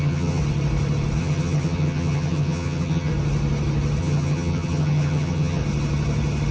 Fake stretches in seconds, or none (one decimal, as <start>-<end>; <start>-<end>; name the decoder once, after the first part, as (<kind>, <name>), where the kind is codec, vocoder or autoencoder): 0.0-0.4 (vocoder, HiFi-GAN); 1.2-3.1; 4.0-5.6